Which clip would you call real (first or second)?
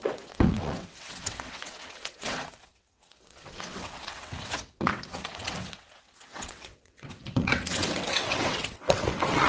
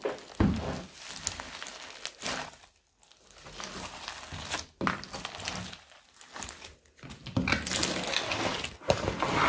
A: second